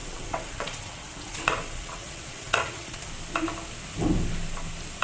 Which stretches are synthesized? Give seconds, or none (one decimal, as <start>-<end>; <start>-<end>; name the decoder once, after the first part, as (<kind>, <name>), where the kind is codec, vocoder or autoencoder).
0.0-3.0 (vocoder, WaveNeXt)